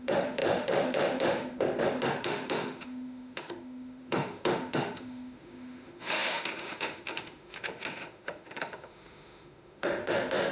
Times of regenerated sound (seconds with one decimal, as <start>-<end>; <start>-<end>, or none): 0.0-10.5